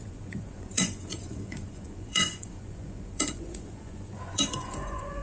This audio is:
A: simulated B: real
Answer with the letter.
A